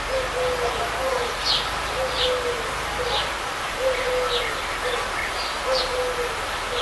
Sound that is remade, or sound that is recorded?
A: recorded